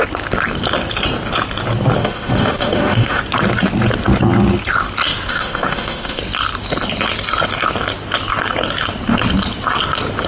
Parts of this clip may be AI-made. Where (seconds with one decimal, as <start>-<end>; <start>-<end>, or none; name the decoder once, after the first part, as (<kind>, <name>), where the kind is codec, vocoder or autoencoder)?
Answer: 2.0-3.2 (autoencoder, DAC-VAE); 5.3-6.2